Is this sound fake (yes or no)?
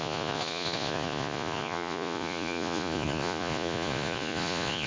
yes